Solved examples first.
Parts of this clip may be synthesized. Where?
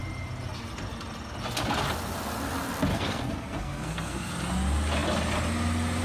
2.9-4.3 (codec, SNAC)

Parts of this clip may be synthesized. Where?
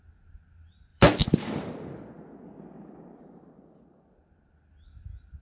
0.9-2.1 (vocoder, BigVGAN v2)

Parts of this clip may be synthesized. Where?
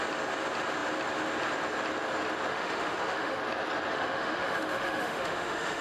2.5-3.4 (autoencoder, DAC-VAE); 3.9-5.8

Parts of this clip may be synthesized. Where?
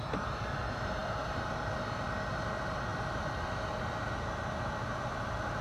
0.0-2.9 (vocoder, BigVGAN v2); 4.8-5.6